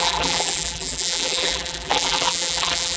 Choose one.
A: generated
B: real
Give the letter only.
A